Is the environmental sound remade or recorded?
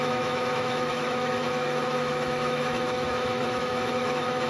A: remade